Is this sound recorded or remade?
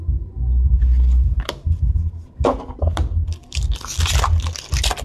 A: recorded